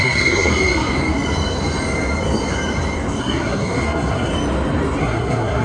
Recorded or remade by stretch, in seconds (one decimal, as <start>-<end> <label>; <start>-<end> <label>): 0.0-0.5 remade; 0.5-3.2 recorded; 3.2-4.3 remade; 4.3-5.0 recorded; 5.0-5.6 remade